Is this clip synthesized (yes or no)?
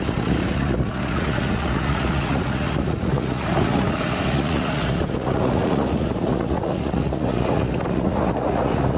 yes